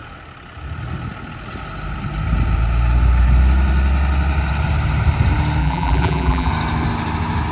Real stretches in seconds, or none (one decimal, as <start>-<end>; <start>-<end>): 0.0-5.6; 6.5-7.5